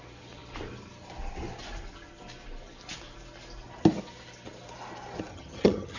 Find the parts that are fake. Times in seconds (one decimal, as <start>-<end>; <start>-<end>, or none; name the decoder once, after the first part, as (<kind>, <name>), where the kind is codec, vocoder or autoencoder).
5.3-6.0 (vocoder, HiFi-GAN)